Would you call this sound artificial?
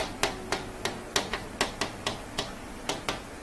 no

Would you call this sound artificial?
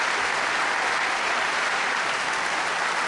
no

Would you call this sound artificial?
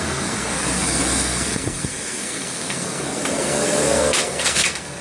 yes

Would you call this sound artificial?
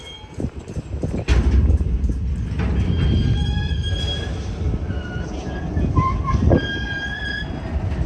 no